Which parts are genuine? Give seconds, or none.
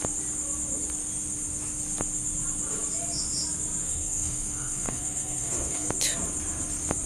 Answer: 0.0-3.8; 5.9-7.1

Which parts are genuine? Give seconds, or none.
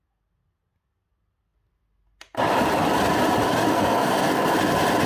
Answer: 0.0-3.7; 4.6-5.1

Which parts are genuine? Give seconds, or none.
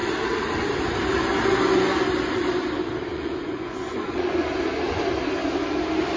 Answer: 0.0-3.1; 5.0-6.2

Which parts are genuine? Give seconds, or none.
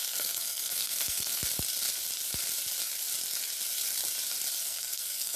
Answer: 1.4-4.6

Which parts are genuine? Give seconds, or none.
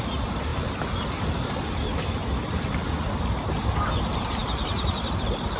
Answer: 0.0-5.6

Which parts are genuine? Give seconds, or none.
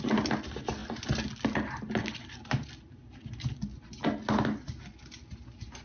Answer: 0.0-5.8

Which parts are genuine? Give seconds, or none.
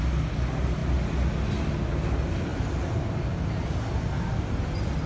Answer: 0.0-5.1